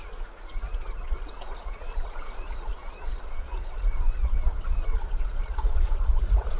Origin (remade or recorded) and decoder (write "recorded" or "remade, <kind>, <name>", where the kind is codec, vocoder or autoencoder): remade, vocoder, Vocos